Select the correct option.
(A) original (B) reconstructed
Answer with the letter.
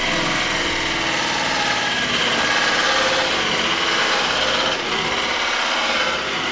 A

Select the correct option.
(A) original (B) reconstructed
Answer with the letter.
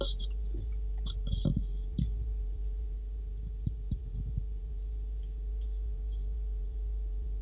B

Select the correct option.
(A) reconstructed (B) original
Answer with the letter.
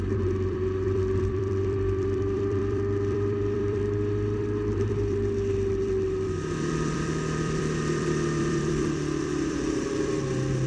A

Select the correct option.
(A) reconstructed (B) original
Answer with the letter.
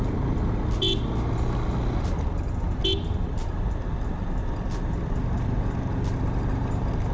B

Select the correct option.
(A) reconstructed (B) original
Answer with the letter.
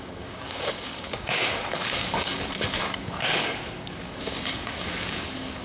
A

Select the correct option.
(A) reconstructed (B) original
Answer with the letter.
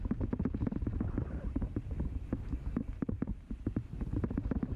B